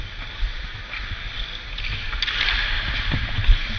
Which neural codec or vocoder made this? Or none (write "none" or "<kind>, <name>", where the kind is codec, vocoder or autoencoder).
none